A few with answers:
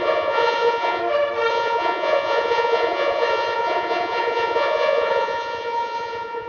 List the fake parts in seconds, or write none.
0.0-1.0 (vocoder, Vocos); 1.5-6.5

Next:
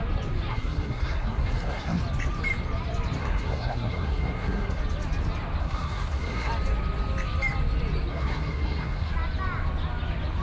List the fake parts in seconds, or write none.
0.5-2.0 (codec, SNAC); 3.2-4.8; 5.6-6.5; 8.1-9.1

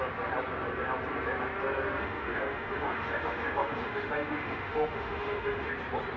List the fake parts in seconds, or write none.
2.0-5.7 (autoencoder, DAC-VAE)

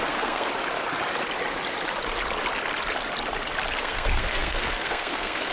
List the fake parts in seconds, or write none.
0.0-0.5 (codec, SNAC); 3.8-5.5

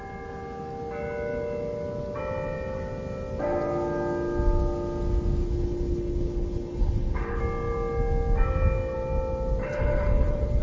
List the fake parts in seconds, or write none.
5.4-7.4 (codec, HILCodec); 9.6-10.6

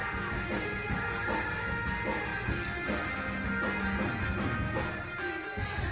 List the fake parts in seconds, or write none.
none

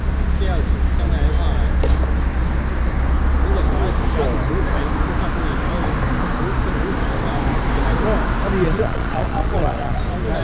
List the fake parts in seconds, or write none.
8.6-10.0 (vocoder, Vocos)